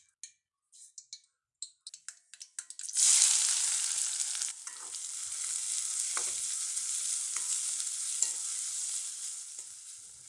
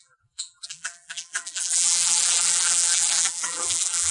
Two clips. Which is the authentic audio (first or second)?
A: first